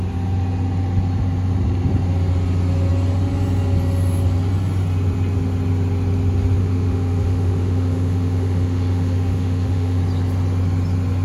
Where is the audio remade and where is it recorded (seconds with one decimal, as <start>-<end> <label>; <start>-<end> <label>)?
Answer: 0.0-6.6 recorded; 6.6-10.0 remade; 10.0-11.2 recorded